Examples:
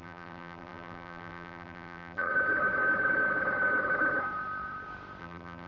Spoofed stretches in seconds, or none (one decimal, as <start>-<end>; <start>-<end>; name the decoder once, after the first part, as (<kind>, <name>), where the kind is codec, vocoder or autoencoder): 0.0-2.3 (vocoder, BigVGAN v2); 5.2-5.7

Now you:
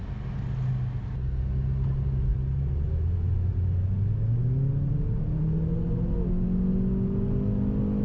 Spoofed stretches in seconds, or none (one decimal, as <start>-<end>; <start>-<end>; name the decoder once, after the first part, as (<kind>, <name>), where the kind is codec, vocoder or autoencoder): none

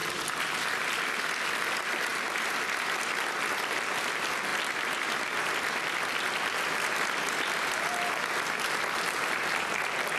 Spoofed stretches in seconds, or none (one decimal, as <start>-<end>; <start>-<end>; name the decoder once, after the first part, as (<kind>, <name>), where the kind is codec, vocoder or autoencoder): 1.5-2.1 (vocoder, BigVGAN v2); 3.6-10.2